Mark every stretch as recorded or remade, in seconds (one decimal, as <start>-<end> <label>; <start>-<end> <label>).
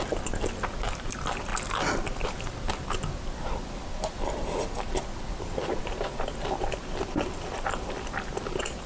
0.0-8.9 recorded